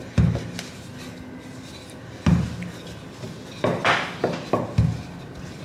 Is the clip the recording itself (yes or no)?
yes